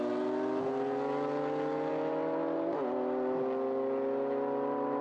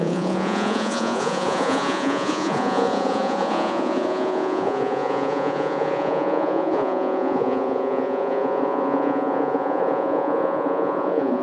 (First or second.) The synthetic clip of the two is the second